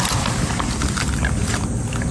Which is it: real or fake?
real